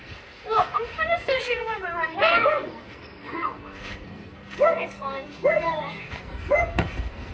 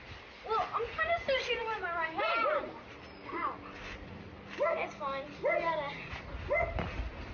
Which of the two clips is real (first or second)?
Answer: second